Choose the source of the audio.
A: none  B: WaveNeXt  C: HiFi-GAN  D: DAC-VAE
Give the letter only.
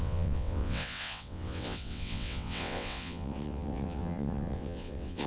B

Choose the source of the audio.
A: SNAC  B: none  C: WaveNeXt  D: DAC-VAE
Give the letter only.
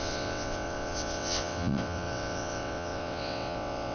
C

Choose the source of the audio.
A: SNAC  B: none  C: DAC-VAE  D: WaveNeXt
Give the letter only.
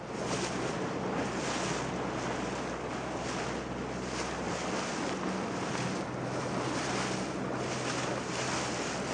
B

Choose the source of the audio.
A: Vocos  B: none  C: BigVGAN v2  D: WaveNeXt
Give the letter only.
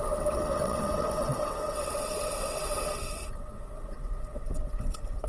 D